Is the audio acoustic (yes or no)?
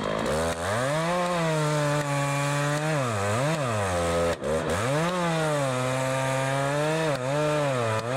yes